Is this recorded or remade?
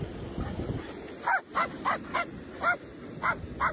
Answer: recorded